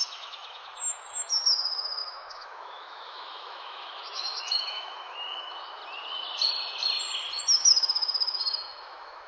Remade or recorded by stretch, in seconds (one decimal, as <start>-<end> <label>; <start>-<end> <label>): 0.0-5.8 remade; 5.8-7.4 recorded; 7.4-9.3 remade